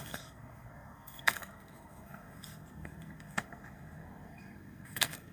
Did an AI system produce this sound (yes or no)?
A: yes